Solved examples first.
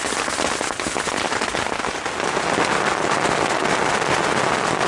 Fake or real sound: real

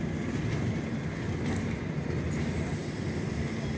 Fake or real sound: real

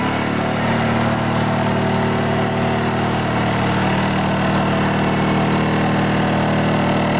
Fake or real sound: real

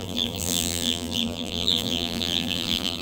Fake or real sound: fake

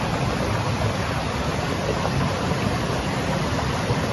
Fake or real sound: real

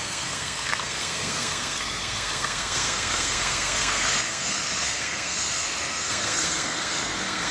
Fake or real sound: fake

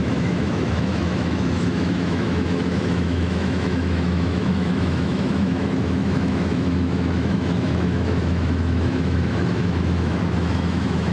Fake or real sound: fake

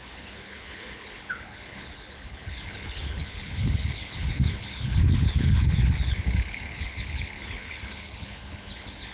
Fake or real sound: fake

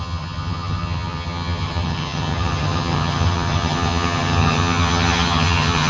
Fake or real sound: fake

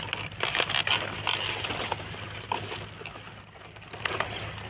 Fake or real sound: real